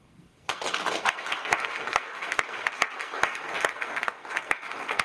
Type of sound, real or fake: fake